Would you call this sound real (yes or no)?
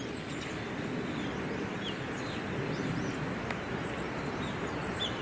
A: no